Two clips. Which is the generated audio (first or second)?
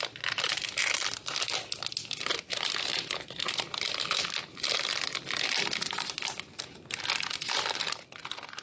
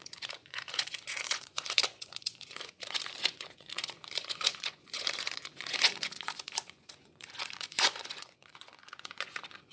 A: second